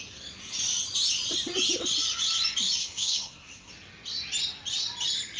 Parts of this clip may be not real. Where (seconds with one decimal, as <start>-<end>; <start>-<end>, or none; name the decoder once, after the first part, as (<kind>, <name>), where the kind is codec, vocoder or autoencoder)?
2.8-3.7 (codec, SNAC)